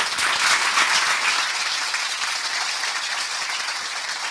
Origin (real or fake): real